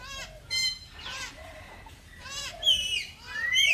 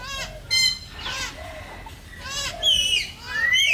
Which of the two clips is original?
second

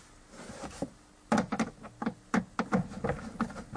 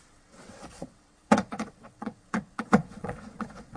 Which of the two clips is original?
first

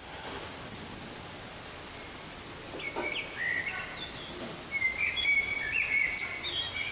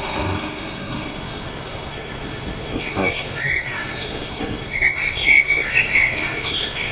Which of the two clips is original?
first